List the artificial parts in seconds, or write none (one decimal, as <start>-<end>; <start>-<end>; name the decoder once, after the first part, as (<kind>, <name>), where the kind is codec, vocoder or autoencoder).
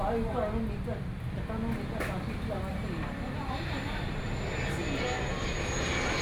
2.7-4.2 (vocoder, BigVGAN v2)